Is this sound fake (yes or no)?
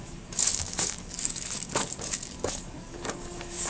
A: yes